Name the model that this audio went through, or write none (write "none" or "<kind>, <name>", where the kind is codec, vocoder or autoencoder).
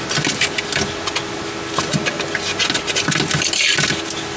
none